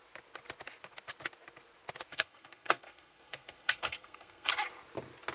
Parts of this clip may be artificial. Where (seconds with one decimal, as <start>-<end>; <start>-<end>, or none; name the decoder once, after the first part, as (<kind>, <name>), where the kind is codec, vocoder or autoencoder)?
2.1-4.5 (codec, SNAC)